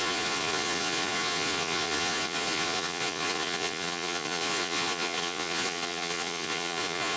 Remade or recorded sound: remade